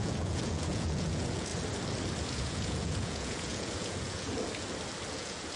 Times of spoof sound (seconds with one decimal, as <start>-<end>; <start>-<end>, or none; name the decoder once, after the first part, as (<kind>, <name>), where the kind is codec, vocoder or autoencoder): 0.0-1.5 (vocoder, Vocos); 2.2-4.3; 5.1-5.6